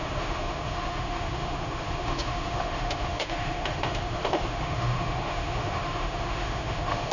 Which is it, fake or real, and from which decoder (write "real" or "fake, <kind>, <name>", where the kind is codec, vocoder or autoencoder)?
fake, autoencoder, DAC-VAE